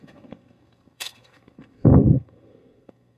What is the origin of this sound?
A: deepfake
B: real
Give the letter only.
A